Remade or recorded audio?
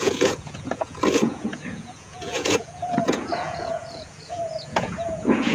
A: remade